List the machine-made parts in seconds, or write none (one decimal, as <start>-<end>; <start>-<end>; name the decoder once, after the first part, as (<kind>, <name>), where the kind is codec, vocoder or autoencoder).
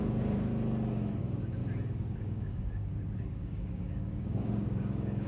0.0-0.5 (codec, DAC); 1.2-1.6; 2.2-5.3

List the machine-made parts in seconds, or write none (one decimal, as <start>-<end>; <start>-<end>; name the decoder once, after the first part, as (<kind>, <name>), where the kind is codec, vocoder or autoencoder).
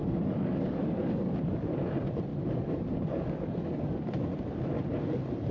0.0-1.3 (codec, DAC); 2.3-3.8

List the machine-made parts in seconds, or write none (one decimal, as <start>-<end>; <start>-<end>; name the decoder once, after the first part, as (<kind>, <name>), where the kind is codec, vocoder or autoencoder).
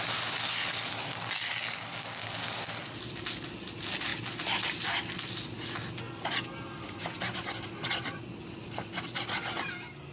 1.9-2.7 (codec, DAC)